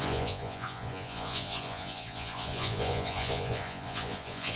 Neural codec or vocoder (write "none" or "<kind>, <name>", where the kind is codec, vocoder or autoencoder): vocoder, Vocos